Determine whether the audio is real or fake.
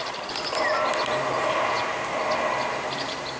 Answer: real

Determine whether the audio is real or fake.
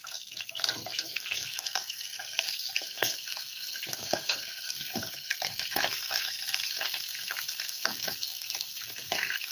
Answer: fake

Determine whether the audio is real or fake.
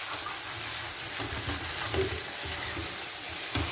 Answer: real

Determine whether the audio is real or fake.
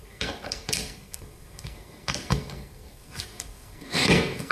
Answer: fake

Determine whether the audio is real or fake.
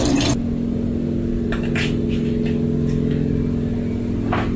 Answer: real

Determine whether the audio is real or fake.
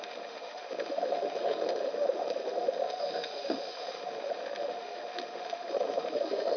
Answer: fake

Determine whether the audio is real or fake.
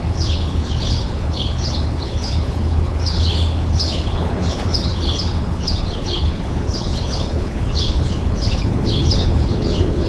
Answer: fake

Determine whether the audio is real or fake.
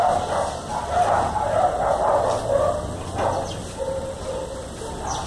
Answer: real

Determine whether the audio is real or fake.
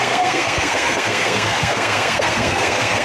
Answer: fake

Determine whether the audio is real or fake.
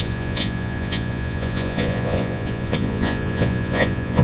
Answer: fake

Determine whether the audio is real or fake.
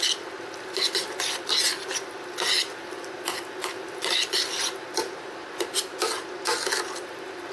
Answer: real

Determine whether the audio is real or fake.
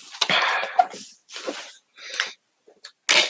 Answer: real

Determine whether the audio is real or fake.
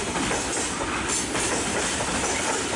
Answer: real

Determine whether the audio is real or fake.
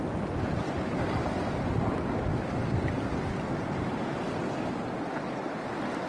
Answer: real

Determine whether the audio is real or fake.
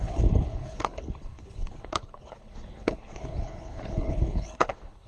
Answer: fake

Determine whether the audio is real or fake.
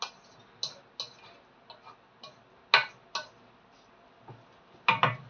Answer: real